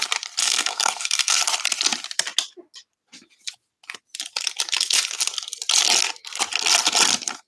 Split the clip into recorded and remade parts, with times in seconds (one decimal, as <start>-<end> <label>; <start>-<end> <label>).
0.0-0.4 recorded; 0.4-1.4 remade; 1.4-7.5 recorded